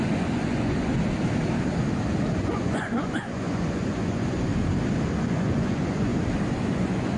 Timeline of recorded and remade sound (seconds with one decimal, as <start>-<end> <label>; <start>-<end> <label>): 0.0-0.9 remade; 0.9-2.4 recorded; 2.4-4.5 remade; 4.5-5.2 recorded; 5.2-6.1 remade; 6.1-6.6 recorded; 6.6-7.2 remade